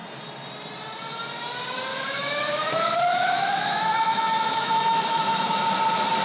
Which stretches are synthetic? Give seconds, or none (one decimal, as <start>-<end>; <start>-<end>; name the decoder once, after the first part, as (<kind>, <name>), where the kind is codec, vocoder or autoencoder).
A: 1.9-5.6 (autoencoder, DAC-VAE)